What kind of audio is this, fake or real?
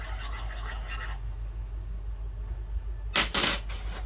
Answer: real